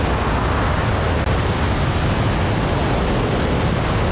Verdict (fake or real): real